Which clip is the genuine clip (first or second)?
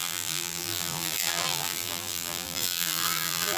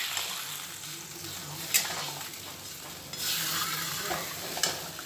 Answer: second